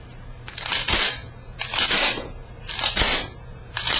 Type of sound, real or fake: fake